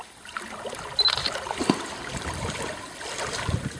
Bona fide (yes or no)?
yes